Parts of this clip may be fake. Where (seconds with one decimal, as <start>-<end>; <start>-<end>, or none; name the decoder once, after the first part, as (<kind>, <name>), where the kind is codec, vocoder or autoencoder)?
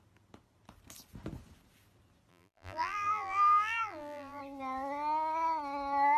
2.3-4.4 (vocoder, BigVGAN v2)